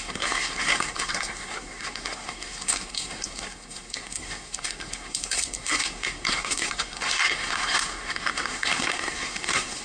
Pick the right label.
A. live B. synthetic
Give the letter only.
B